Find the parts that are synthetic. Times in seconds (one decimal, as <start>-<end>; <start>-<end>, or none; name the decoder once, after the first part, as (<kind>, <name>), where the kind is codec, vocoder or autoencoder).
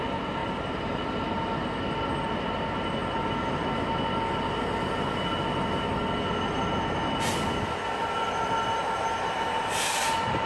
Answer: 0.4-1.0 (vocoder, BigVGAN v2)